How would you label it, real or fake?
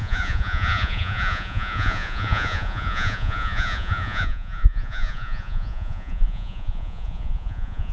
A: fake